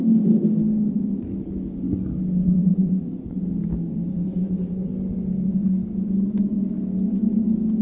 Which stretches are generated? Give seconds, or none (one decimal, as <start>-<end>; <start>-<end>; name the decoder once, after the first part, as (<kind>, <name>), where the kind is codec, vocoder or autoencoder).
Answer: 2.7-3.4 (vocoder, Vocos); 3.9-4.9